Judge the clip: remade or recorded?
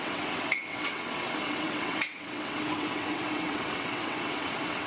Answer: remade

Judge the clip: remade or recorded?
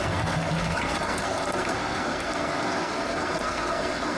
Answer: remade